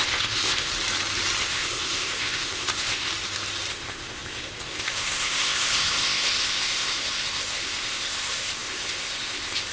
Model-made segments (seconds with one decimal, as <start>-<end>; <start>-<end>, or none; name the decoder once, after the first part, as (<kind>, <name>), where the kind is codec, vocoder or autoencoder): 0.0-0.7 (codec, ZipCodec); 1.4-3.1; 3.7-9.7